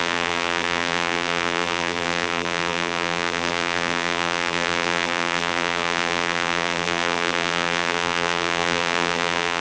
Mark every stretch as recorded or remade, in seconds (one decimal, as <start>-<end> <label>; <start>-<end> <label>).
0.0-9.6 remade